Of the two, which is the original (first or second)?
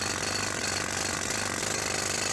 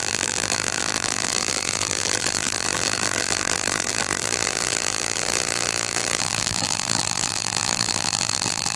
first